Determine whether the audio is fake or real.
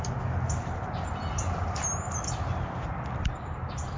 real